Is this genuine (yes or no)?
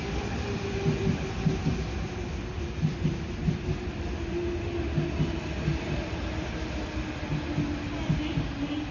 yes